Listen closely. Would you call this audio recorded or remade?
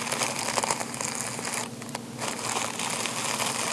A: recorded